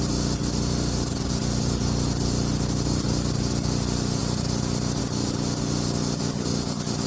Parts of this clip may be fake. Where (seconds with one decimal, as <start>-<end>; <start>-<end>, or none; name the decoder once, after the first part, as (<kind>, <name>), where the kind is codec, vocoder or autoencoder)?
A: none